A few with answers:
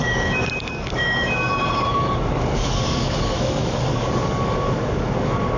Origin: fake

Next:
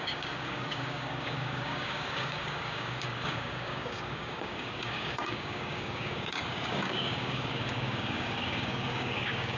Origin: fake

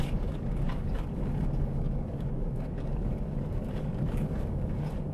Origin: fake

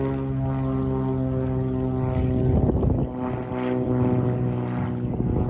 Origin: real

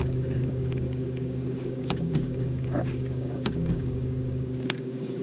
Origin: fake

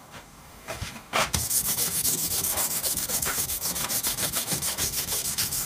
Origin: fake